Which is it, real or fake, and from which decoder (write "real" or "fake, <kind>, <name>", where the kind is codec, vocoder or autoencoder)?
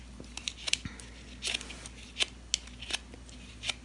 real